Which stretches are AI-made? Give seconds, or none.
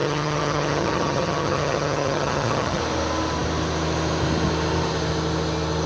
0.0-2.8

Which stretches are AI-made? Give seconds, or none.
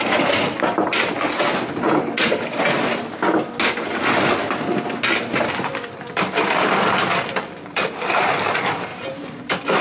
5.7-8.5; 8.9-9.8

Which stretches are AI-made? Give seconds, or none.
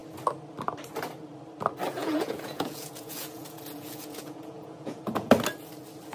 2.0-5.3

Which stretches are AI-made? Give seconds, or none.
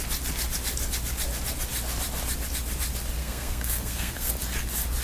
3.2-4.3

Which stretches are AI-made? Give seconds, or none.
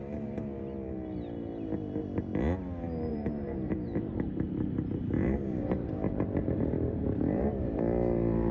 3.1-7.8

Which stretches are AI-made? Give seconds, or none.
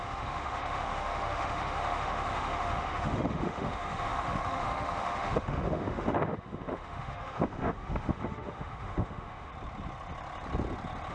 0.0-9.5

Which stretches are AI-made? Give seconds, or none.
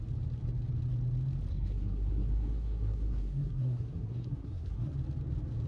1.5-4.9